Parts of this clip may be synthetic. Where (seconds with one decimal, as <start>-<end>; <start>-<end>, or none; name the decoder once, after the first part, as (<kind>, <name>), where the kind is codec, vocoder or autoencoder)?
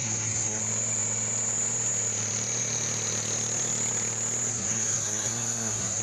0.0-0.6 (codec, SNAC); 4.5-6.0